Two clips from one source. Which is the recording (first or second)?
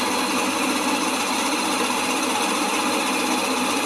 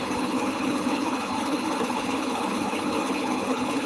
first